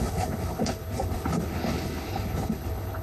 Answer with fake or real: fake